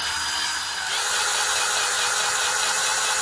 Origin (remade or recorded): recorded